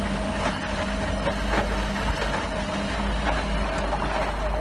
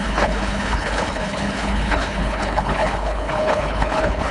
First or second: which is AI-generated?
second